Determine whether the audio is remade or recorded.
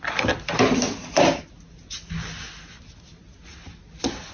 recorded